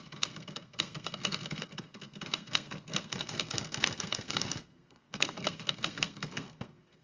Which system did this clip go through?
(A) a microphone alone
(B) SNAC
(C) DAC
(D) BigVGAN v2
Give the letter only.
B